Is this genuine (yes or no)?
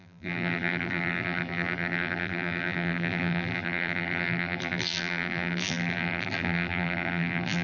no